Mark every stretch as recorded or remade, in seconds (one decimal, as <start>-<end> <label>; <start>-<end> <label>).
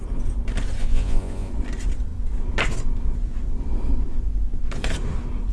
0.0-0.8 recorded; 0.8-1.5 remade; 1.5-5.5 recorded